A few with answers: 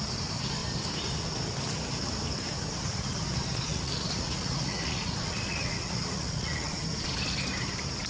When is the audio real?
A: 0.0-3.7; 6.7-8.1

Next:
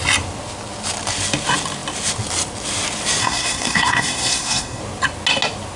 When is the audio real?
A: 0.0-3.2; 4.8-5.8